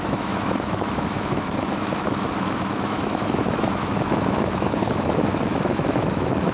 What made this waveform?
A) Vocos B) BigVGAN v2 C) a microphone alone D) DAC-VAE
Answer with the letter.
D